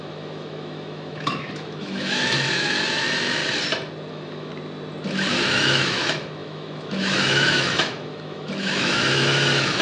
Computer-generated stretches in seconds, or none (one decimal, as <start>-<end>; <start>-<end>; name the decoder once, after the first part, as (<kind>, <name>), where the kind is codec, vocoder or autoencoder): 0.0-3.4 (autoencoder, DAC-VAE); 4.1-4.5; 5.3-9.8